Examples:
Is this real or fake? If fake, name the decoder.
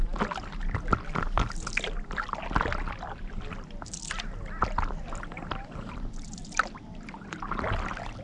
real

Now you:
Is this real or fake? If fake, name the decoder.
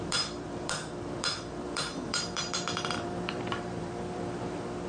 fake, vocoder, BigVGAN v2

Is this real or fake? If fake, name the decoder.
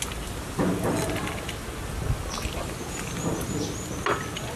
real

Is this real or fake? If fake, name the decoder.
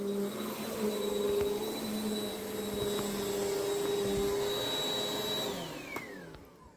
real